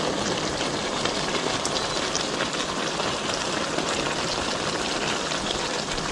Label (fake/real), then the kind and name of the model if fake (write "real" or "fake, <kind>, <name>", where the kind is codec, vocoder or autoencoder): real